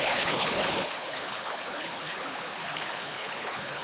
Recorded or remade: remade